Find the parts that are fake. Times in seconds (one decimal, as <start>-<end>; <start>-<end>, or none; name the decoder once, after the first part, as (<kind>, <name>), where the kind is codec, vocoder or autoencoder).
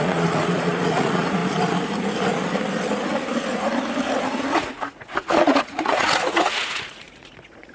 0.0-1.4 (vocoder, Vocos); 4.2-7.7